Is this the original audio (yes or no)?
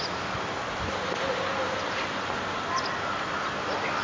yes